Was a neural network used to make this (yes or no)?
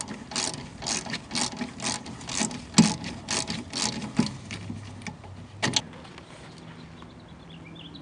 no